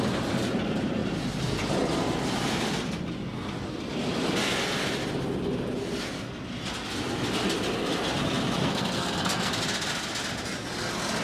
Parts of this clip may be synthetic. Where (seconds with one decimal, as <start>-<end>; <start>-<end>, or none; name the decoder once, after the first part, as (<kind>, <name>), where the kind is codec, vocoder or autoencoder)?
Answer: 8.6-9.5 (codec, SNAC)